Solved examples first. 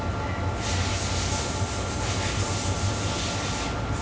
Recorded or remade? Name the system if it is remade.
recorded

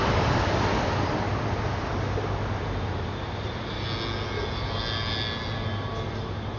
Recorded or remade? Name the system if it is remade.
recorded